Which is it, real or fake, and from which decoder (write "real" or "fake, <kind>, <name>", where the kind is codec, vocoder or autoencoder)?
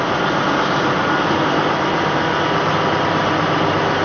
real